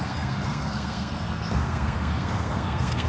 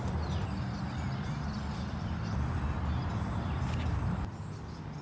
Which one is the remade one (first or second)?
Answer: first